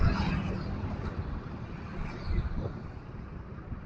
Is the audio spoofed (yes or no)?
no